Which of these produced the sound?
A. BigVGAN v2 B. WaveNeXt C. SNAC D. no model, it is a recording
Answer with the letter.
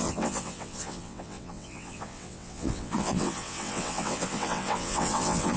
B